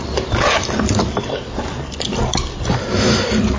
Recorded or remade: recorded